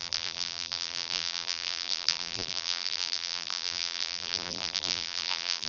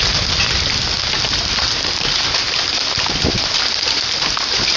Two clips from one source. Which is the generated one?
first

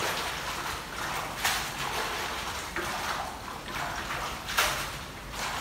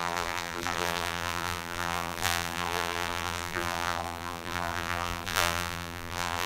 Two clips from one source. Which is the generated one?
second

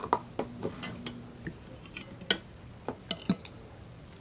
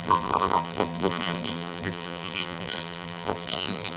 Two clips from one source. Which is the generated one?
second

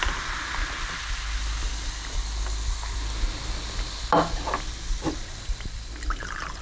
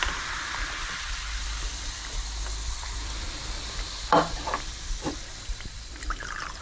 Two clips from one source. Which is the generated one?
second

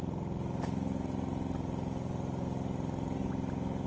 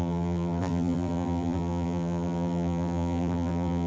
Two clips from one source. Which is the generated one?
second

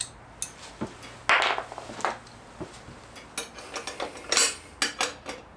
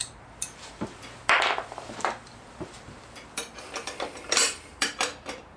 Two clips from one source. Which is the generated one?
second